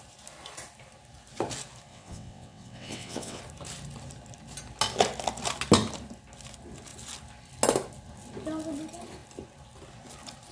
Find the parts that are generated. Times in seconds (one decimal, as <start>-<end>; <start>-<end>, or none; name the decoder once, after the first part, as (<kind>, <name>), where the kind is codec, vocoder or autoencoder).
1.9-3.4 (vocoder, WaveNeXt)